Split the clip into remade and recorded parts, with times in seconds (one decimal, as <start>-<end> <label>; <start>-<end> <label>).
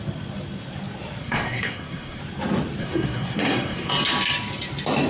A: 0.0-1.2 recorded; 1.2-2.2 remade; 2.2-2.8 recorded; 2.8-3.9 remade; 3.9-5.1 recorded